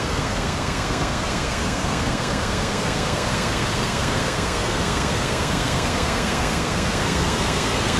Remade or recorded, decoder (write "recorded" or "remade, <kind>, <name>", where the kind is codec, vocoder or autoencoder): remade, codec, SNAC